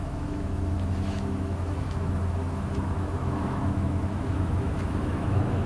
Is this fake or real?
fake